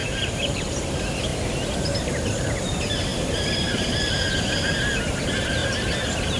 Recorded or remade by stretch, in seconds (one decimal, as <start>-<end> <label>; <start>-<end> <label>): 0.0-0.8 remade; 0.8-3.1 recorded; 3.1-4.3 remade; 4.3-5.6 recorded; 5.6-6.4 remade